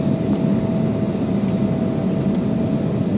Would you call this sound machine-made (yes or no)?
no